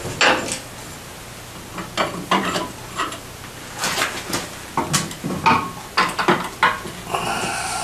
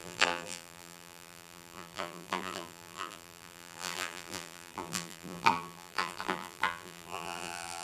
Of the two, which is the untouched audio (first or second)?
first